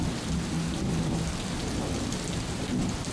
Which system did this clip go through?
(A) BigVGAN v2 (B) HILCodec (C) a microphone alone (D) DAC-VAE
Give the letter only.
C